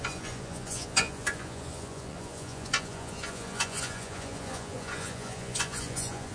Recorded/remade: remade